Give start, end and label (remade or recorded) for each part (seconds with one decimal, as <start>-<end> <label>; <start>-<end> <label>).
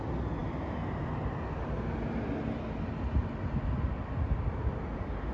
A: 0.0-5.3 recorded